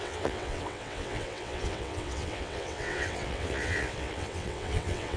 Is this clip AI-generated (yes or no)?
yes